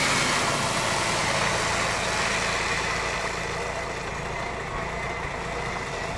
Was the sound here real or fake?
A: real